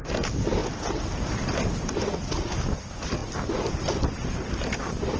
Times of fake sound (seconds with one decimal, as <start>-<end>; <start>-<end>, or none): none